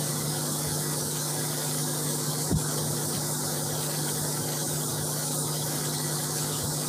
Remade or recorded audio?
remade